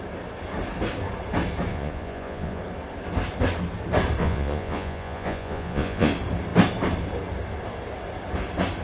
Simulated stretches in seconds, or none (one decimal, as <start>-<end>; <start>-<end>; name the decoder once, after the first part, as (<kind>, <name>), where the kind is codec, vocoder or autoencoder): 1.7-2.6 (vocoder, Vocos); 4.2-6.1